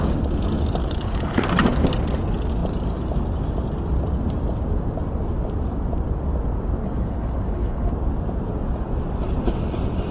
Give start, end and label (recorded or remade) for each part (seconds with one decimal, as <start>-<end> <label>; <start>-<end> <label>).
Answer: 0.0-0.8 recorded; 0.8-1.4 remade; 1.4-6.8 recorded; 6.8-7.9 remade; 7.9-10.1 recorded